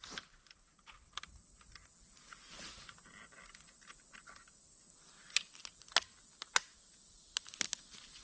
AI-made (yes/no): no